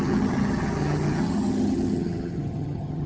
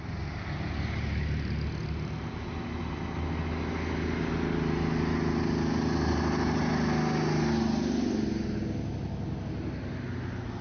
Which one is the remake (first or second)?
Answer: first